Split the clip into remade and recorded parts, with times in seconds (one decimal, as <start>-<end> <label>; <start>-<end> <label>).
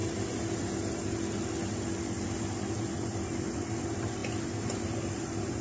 0.0-5.6 recorded